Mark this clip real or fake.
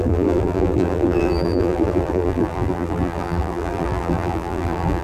fake